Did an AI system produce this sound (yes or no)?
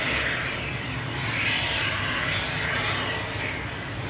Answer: no